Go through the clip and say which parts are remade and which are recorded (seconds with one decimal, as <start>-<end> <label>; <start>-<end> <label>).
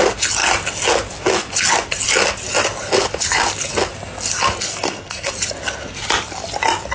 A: 0.0-4.7 recorded; 4.7-5.3 remade; 5.3-6.9 recorded